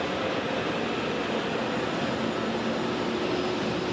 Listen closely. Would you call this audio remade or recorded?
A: recorded